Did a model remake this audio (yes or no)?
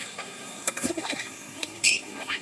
yes